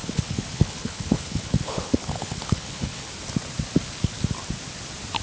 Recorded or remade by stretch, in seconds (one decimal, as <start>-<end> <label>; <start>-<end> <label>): 0.0-3.1 remade; 3.1-5.2 recorded